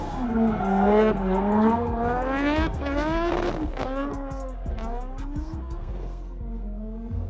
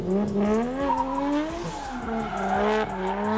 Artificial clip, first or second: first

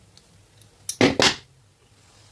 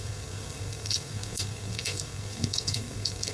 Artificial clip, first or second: second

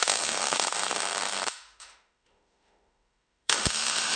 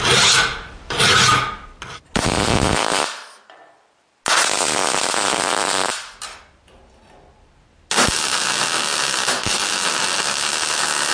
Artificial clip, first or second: first